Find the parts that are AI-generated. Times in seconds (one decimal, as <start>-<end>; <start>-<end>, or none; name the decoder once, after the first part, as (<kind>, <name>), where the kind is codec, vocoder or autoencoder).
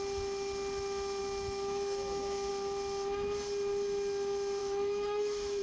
1.2-2.5 (autoencoder, DAC-VAE); 4.6-5.6